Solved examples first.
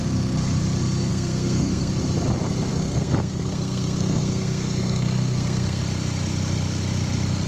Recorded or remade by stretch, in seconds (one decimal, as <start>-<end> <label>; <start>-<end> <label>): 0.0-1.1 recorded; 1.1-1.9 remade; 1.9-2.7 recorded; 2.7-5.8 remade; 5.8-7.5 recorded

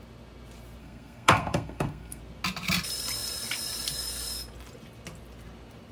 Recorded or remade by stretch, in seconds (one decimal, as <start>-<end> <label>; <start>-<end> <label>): 0.0-0.8 recorded; 0.8-2.2 remade; 2.2-5.9 recorded

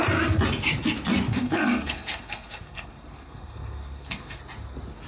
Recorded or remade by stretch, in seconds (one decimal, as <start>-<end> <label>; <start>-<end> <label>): 0.0-1.3 recorded; 1.3-4.4 remade; 4.4-5.1 recorded

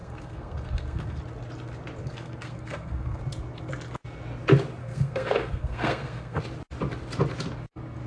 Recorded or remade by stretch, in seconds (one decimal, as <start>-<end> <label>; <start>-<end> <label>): 0.0-1.2 remade; 1.2-2.0 recorded; 2.0-3.2 remade; 3.2-4.8 recorded; 4.8-6.4 remade; 6.4-8.1 recorded

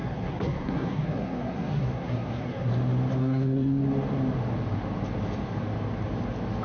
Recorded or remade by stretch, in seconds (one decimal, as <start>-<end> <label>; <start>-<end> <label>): 0.0-2.7 remade; 2.7-3.2 recorded; 3.2-3.8 remade; 3.8-6.6 recorded

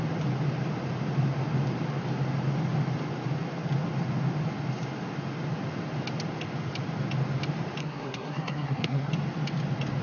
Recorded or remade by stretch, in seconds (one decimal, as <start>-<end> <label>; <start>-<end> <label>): 0.0-7.8 recorded; 7.8-9.1 remade; 9.1-10.0 recorded